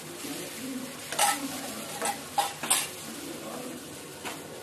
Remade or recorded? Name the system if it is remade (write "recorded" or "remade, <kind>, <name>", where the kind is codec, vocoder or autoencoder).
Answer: recorded